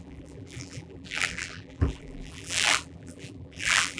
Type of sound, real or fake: fake